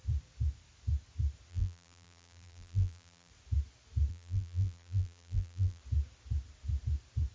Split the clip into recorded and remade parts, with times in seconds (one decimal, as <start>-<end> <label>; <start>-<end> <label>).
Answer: 0.0-1.5 recorded; 1.5-3.3 remade; 3.3-4.1 recorded; 4.1-5.8 remade; 5.8-7.3 recorded

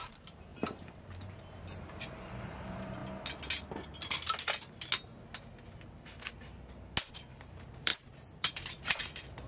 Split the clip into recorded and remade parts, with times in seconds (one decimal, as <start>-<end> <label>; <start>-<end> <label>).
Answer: 0.0-3.0 remade; 3.0-7.1 recorded; 7.1-9.5 remade

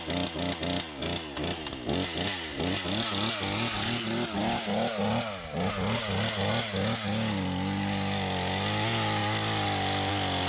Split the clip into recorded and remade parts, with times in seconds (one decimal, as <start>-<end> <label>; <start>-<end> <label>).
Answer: 0.0-10.5 recorded

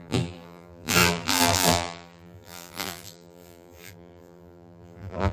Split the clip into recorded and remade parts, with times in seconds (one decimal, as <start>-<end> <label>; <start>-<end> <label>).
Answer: 0.0-5.3 remade

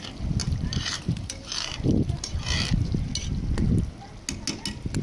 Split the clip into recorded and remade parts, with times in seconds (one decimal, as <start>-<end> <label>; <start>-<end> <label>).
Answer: 0.0-0.4 recorded; 0.4-3.0 remade; 3.0-5.0 recorded